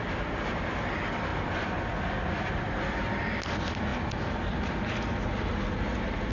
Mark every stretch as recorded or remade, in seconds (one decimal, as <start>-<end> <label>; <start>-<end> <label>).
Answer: 0.0-6.3 recorded